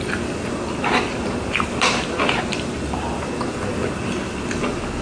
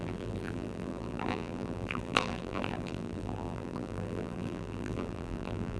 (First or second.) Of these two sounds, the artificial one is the second